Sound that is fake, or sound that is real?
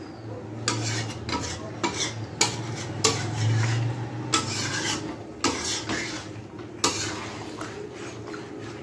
real